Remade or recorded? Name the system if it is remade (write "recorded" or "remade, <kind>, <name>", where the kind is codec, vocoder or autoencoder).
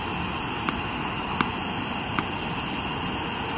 recorded